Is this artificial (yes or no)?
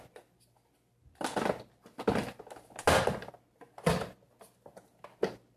no